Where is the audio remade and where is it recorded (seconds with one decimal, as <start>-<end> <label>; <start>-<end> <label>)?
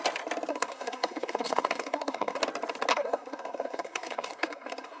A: 0.0-0.5 recorded; 0.5-2.4 remade; 2.4-2.9 recorded; 2.9-5.0 remade